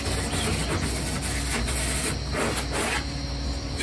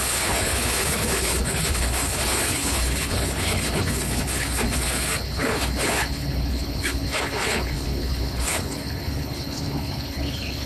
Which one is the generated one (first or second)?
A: second